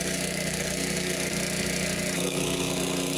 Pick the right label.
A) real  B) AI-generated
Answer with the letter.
B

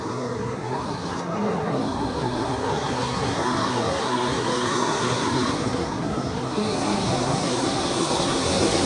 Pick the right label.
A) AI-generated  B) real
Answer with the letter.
A